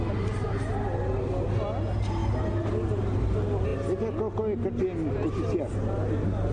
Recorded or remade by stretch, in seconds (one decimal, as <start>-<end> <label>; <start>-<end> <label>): 0.0-6.5 recorded